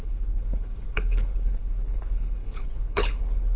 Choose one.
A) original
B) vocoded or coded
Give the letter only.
B